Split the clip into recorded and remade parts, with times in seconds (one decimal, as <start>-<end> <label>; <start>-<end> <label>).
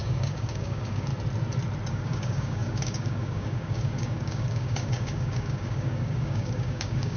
0.0-1.1 remade; 1.1-1.9 recorded; 1.9-7.2 remade